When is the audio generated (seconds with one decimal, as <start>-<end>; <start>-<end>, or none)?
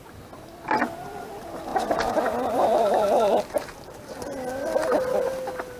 1.7-4.0